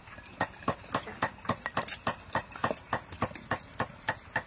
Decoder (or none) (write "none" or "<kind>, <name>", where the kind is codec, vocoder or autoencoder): none